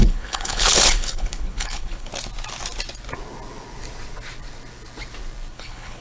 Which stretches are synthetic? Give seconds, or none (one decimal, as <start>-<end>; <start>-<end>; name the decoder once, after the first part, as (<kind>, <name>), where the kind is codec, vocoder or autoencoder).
0.0-2.1 (codec, HILCodec); 5.5-6.0